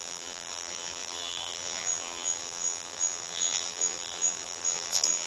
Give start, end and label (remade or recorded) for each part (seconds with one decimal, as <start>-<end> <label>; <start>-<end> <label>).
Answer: 0.0-5.3 remade